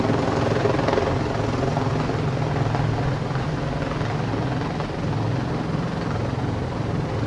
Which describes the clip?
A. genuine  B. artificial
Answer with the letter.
A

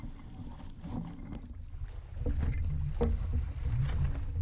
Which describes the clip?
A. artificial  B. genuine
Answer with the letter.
B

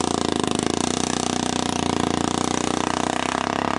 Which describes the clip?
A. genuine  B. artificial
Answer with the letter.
A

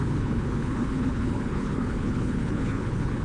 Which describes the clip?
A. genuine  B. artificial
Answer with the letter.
B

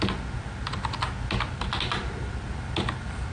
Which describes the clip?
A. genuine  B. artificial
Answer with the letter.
A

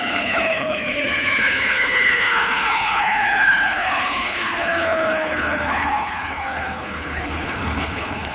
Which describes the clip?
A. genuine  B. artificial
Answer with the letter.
B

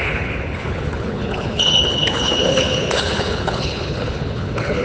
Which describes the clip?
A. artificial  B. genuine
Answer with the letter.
A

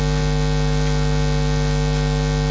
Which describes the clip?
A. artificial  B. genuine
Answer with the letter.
B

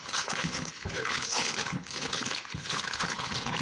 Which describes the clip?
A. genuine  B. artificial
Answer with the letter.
B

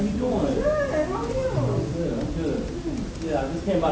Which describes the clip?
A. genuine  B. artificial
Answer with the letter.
A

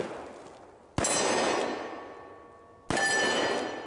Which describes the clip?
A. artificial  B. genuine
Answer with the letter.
B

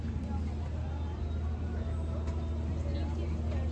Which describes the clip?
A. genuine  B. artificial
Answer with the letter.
A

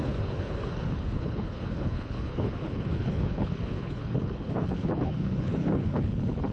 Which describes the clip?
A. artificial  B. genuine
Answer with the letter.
A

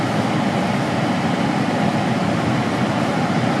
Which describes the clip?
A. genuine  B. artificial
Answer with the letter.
A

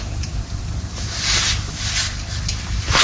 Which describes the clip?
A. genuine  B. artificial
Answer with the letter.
A